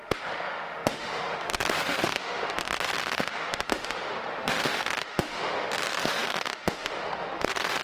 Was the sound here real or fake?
fake